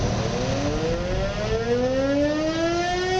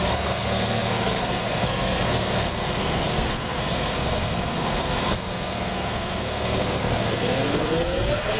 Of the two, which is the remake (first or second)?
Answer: second